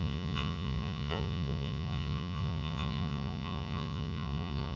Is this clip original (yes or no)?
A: no